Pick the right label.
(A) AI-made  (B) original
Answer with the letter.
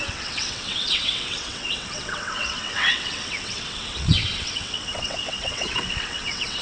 A